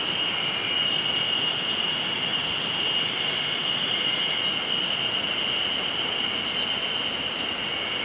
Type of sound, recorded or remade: recorded